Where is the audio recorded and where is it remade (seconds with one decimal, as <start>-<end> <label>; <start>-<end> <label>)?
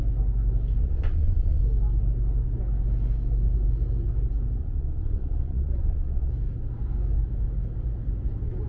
0.0-0.8 recorded; 0.8-1.6 remade; 1.6-4.6 recorded; 4.6-6.3 remade; 6.3-8.7 recorded